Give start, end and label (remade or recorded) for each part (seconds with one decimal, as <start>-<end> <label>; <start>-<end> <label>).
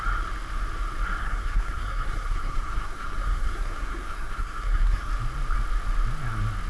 0.0-1.2 recorded; 1.2-5.1 remade; 5.1-6.7 recorded